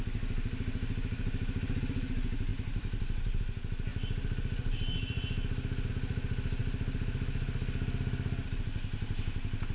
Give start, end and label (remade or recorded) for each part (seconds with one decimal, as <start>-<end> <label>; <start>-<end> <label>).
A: 0.0-2.5 recorded; 2.5-3.4 remade; 3.4-9.7 recorded